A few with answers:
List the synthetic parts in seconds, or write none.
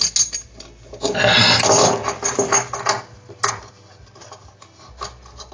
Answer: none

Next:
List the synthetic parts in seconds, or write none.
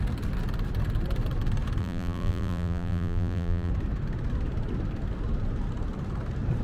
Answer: 1.8-3.7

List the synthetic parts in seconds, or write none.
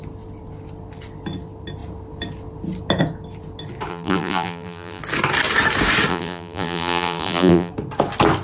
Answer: 3.9-5.0; 6.1-7.7